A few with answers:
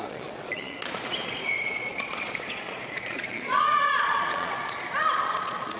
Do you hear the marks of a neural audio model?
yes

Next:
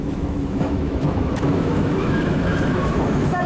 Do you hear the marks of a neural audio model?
yes